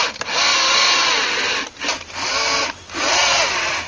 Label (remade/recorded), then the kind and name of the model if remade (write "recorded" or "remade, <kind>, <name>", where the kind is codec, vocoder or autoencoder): recorded